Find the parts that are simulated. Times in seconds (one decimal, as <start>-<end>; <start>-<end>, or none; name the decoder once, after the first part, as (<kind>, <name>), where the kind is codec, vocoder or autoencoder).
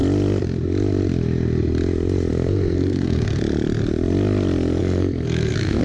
2.3-3.4 (codec, SNAC); 4.8-5.8